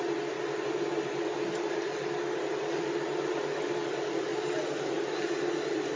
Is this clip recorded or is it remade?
remade